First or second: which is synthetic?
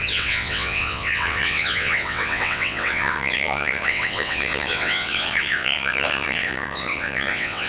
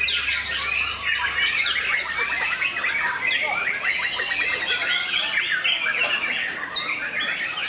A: first